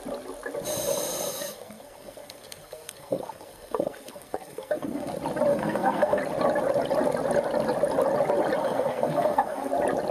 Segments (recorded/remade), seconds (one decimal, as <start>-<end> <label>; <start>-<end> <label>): 0.0-1.3 recorded; 1.3-5.1 remade; 5.1-5.5 recorded; 5.5-6.2 remade; 6.2-8.6 recorded; 8.6-9.7 remade; 9.7-10.1 recorded